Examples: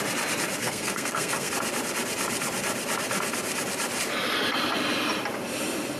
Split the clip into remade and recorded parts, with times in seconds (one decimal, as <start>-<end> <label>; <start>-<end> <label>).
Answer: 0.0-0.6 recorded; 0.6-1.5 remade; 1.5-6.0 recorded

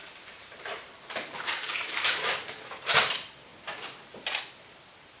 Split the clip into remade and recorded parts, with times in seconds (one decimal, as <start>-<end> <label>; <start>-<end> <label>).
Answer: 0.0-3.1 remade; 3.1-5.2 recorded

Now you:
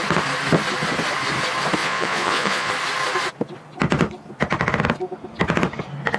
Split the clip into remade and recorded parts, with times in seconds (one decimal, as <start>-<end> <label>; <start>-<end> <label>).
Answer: 0.0-1.8 recorded; 1.8-2.7 remade; 2.7-6.2 recorded

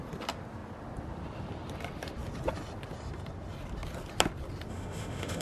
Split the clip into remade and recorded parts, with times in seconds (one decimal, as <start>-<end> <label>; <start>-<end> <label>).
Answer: 0.0-4.7 recorded; 4.7-5.4 remade

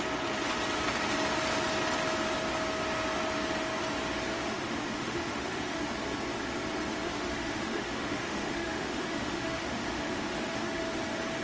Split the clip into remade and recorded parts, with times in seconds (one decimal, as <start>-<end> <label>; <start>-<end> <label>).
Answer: 0.0-4.3 recorded; 4.3-5.8 remade; 5.8-7.0 recorded; 7.0-10.9 remade; 10.9-11.4 recorded

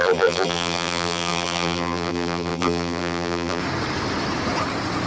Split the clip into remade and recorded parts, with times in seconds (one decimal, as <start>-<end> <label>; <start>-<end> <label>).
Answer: 0.0-3.6 remade; 3.6-5.1 recorded